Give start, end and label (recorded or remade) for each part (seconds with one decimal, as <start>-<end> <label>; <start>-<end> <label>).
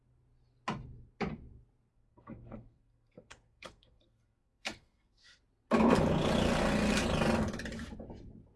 0.0-1.9 recorded; 1.9-5.4 remade; 5.4-8.6 recorded